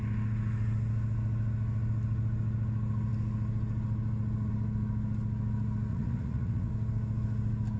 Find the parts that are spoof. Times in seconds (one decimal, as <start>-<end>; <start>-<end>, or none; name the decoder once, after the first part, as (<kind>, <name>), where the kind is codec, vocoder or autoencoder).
5.9-6.7 (vocoder, Vocos)